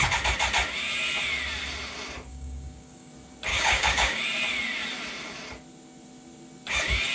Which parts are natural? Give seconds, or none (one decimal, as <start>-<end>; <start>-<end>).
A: 0.0-2.3; 3.1-3.5; 4.2-7.1